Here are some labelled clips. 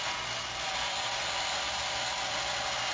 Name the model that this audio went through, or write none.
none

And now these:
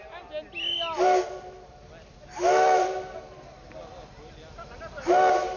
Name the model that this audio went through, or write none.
none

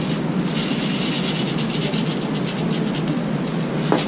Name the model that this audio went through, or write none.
none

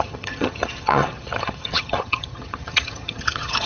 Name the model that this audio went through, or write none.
vocoder, HiFi-GAN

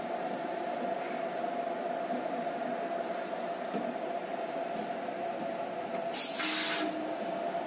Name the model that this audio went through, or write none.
none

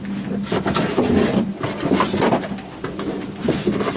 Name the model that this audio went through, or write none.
none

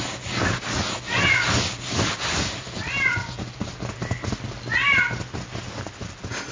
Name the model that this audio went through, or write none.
none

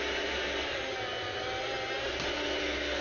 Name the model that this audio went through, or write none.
none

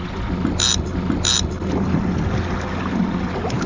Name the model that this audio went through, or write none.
none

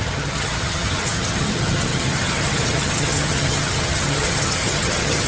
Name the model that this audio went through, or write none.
vocoder, HiFi-GAN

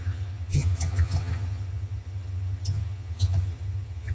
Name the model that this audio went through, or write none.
vocoder, HiFi-GAN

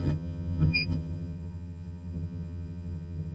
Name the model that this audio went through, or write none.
vocoder, HiFi-GAN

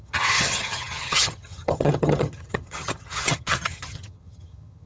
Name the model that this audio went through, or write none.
vocoder, HiFi-GAN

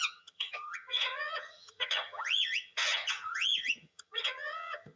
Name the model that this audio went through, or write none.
vocoder, HiFi-GAN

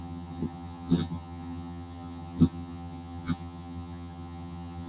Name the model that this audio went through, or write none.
vocoder, HiFi-GAN